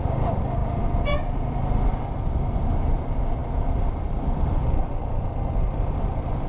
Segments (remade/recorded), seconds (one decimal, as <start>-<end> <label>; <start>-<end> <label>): 0.0-6.5 recorded